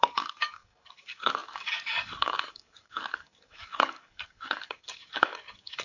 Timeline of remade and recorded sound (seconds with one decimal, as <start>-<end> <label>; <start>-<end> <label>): 0.0-5.8 remade